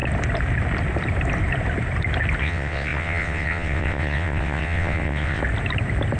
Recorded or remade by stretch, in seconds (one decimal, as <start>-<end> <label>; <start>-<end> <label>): 0.0-2.4 recorded; 2.4-5.4 remade; 5.4-6.2 recorded